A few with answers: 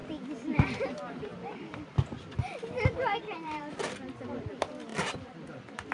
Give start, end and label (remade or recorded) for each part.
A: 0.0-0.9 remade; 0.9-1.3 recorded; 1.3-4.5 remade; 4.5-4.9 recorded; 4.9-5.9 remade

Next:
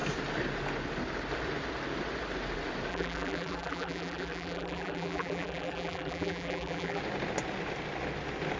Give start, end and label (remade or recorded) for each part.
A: 0.0-2.9 recorded; 2.9-7.0 remade; 7.0-8.6 recorded